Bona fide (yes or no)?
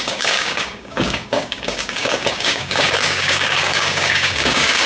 no